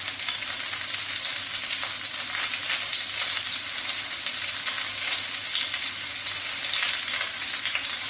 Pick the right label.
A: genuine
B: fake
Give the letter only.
A